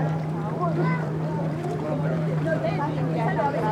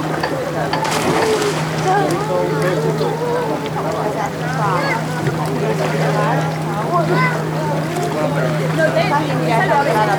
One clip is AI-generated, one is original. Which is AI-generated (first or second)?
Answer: first